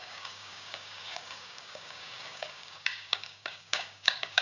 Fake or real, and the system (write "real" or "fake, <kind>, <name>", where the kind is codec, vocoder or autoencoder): fake, codec, DAC